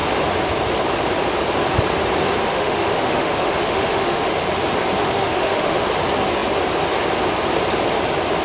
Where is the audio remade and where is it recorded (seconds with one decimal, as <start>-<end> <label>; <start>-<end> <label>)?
0.0-2.4 recorded; 2.4-4.3 remade; 4.3-5.0 recorded; 5.0-5.9 remade; 5.9-8.4 recorded

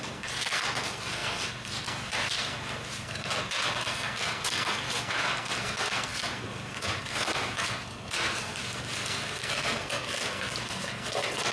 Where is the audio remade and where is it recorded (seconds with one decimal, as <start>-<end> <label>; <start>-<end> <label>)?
0.0-11.5 remade

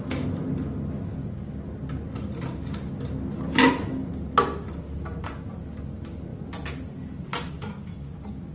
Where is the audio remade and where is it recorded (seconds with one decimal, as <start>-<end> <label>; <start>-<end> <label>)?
0.0-8.5 recorded

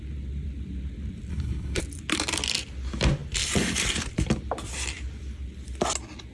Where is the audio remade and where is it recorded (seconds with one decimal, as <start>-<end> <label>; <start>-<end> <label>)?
0.0-1.3 recorded; 1.3-1.8 remade; 1.8-6.3 recorded

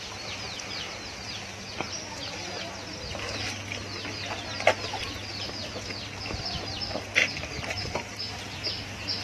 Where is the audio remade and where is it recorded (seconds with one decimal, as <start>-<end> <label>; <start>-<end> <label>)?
0.0-7.2 recorded; 7.2-8.3 remade; 8.3-9.2 recorded